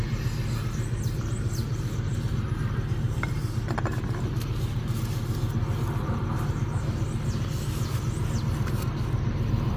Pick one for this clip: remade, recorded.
recorded